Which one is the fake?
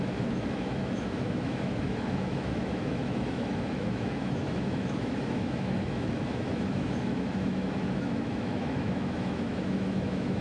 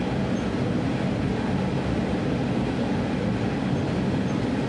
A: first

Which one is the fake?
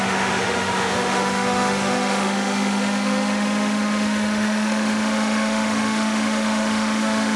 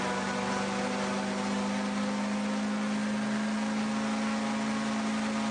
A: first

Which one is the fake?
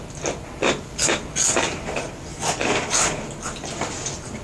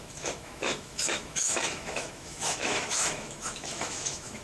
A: second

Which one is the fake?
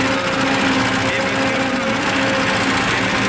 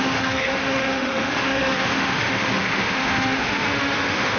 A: second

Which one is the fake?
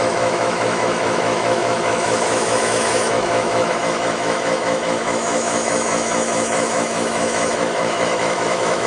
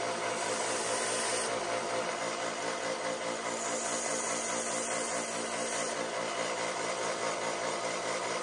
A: first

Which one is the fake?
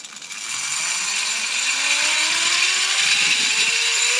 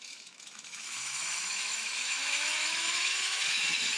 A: second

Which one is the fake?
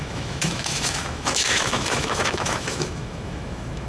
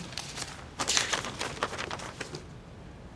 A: first